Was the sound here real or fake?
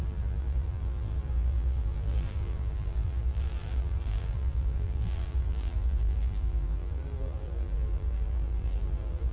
fake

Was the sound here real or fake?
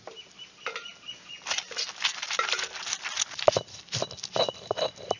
real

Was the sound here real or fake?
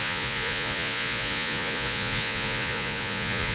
fake